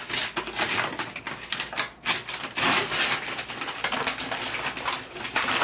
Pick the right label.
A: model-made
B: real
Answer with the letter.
B